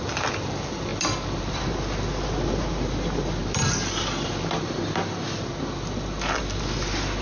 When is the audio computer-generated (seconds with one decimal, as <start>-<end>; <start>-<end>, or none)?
none